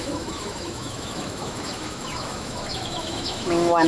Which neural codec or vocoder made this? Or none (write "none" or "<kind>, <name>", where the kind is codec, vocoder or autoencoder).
autoencoder, DAC-VAE